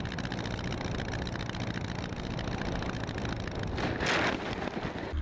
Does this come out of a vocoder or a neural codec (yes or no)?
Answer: no